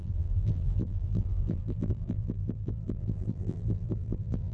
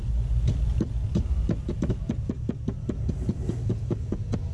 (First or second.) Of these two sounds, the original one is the second